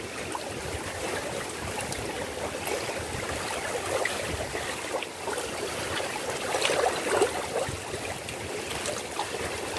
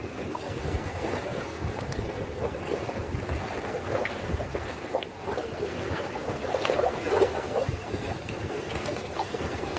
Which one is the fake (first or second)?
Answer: second